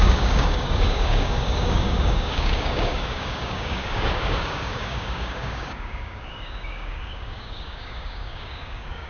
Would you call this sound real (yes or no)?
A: no